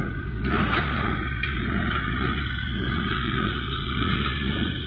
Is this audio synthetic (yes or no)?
yes